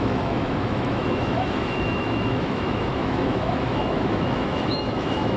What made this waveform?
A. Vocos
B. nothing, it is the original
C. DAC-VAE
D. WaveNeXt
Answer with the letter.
C